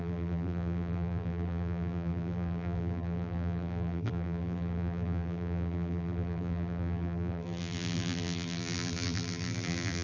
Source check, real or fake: fake